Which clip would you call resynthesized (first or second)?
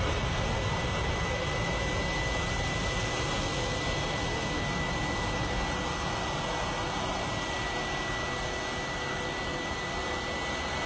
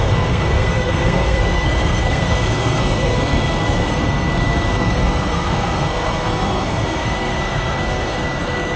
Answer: second